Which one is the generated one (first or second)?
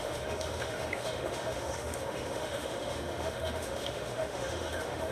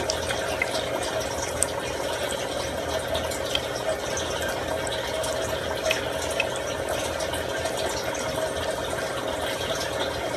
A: first